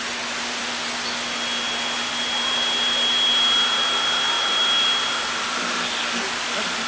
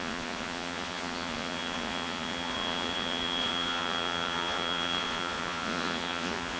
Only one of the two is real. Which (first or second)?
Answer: first